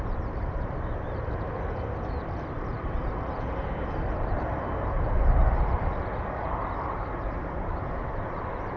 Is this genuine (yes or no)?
yes